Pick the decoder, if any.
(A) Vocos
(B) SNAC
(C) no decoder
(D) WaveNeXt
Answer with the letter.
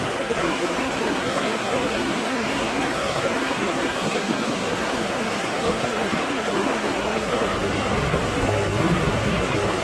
B